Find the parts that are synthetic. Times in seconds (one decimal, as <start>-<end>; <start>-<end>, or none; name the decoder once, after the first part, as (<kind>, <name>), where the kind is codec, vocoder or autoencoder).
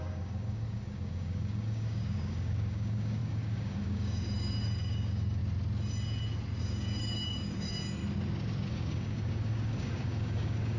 0.0-5.4 (codec, DAC); 6.6-8.0; 8.7-10.8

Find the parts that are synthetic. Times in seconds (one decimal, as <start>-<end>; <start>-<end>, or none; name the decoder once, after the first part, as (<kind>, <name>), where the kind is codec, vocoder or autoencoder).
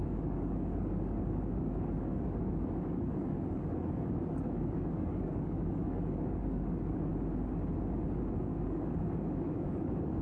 0.0-7.1 (codec, DAC); 8.2-10.2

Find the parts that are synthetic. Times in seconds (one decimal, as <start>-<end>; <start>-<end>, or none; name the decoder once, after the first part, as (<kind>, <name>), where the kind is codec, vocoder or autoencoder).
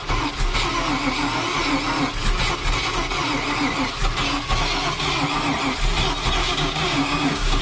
6.4-7.6 (codec, DAC)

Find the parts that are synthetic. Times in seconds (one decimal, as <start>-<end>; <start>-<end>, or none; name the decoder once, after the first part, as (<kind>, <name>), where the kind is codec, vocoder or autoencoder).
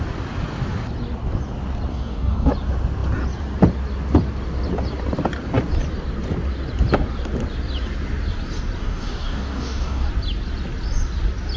1.9-2.5 (codec, DAC); 8.8-10.1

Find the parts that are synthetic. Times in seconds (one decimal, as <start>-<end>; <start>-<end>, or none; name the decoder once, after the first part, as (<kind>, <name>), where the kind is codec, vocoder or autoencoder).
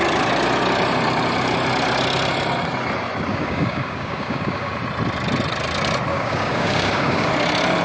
3.3-4.7 (codec, DAC); 6.1-7.3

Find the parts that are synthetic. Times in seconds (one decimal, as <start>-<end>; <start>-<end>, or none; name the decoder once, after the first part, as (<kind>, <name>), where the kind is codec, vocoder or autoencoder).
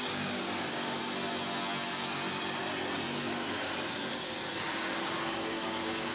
0.0-1.0 (codec, DAC); 4.7-6.1